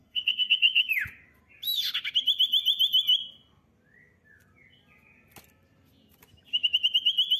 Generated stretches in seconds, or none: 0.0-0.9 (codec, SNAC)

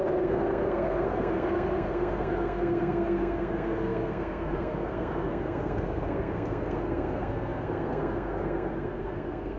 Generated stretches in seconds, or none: 0.0-9.6 (codec, SNAC)

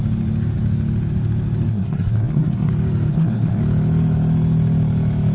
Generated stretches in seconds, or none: 1.7-2.7 (codec, SNAC); 3.1-3.6

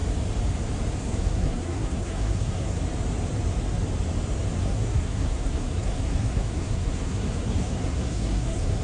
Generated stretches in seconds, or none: 1.0-2.8 (codec, SNAC); 4.6-8.8